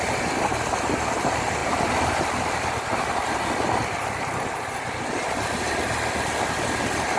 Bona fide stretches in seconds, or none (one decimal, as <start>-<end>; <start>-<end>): 0.0-7.2